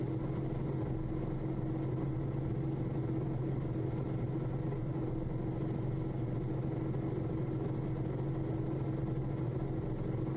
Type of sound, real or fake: real